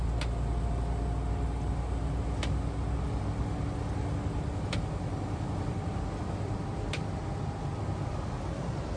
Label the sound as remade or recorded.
recorded